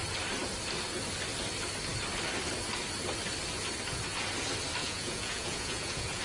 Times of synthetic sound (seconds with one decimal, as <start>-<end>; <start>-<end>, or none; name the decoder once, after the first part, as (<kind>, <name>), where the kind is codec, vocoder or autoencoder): 4.8-6.2 (vocoder, Vocos)